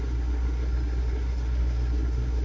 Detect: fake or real fake